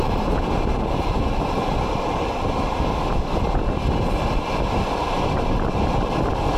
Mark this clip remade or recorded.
recorded